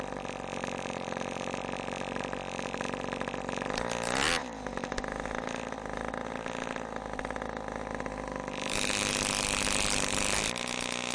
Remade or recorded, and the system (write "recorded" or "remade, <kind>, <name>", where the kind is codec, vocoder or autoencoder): recorded